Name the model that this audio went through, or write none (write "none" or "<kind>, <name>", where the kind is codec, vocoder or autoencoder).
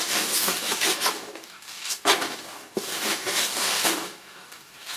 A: codec, DAC